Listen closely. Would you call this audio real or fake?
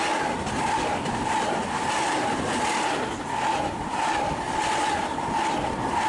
real